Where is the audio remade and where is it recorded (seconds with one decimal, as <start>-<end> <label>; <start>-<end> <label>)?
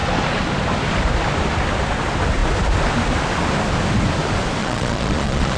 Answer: 0.0-4.6 recorded; 4.6-5.6 remade